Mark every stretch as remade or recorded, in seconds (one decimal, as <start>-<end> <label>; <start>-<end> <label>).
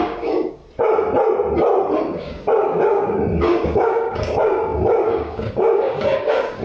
0.0-0.6 remade; 0.6-2.0 recorded; 2.0-6.6 remade